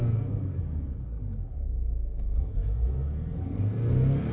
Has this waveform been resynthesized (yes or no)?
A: yes